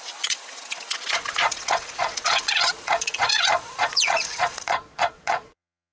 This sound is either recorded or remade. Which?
remade